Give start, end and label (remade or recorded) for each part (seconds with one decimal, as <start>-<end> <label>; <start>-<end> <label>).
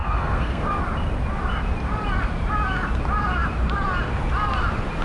0.0-0.8 remade; 0.8-5.0 recorded